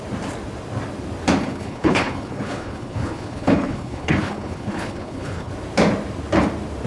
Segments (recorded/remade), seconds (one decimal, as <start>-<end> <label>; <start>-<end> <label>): 0.0-1.4 recorded; 1.4-5.5 remade; 5.5-6.9 recorded